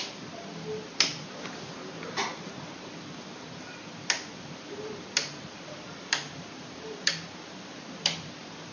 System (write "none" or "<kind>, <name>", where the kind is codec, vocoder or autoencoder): vocoder, BigVGAN v2